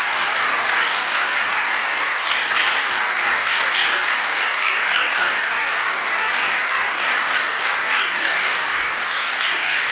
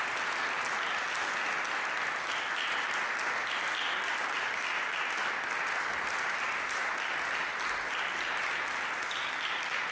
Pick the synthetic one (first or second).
first